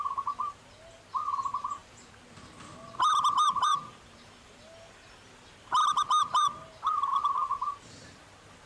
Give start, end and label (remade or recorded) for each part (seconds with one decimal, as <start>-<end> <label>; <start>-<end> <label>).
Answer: 0.0-8.7 recorded